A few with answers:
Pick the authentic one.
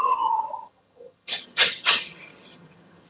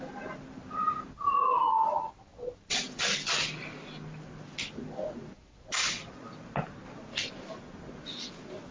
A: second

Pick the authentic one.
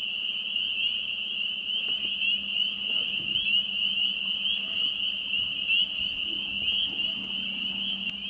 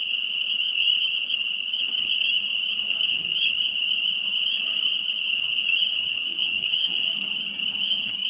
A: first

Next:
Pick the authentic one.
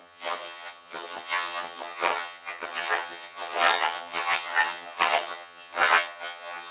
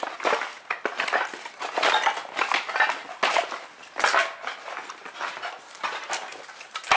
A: second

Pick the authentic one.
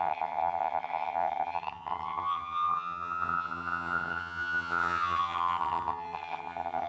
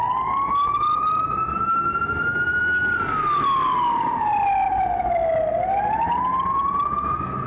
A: second